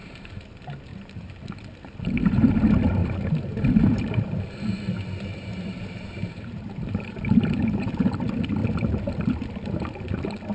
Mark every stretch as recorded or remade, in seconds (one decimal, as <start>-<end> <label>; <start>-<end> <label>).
0.0-0.9 recorded; 0.9-1.4 remade; 1.4-3.0 recorded; 3.0-4.4 remade; 4.4-5.3 recorded; 5.3-7.9 remade; 7.9-10.5 recorded